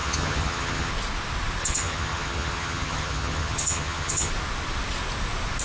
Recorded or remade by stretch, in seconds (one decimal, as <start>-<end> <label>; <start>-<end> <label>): 0.0-0.9 remade; 0.9-1.6 recorded; 1.6-4.3 remade; 4.3-5.6 recorded